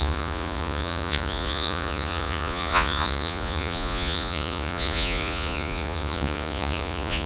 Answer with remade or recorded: remade